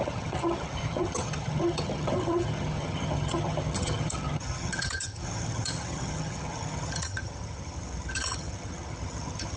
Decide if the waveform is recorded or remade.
remade